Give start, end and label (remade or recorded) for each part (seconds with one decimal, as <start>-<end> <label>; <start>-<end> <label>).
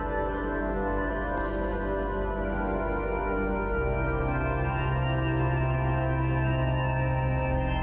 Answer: 0.0-0.6 recorded; 0.6-1.1 remade; 1.1-7.8 recorded